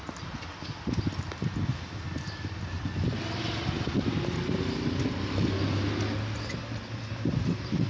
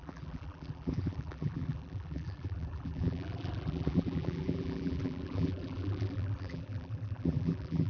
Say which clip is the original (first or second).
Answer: first